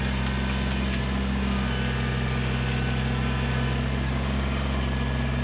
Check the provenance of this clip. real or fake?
real